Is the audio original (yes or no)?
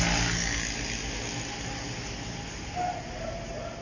yes